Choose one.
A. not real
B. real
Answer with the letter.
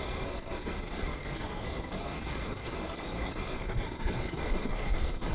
A